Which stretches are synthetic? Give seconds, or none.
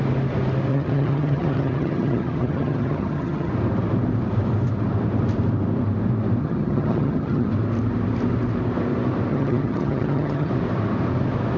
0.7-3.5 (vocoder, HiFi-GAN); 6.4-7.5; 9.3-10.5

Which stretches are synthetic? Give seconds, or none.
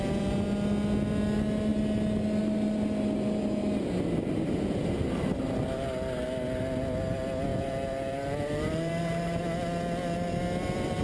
7.5-9.4 (vocoder, BigVGAN v2)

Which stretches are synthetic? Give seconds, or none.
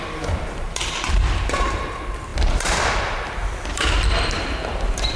0.0-5.2 (vocoder, BigVGAN v2)